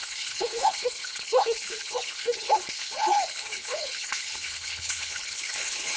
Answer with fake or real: fake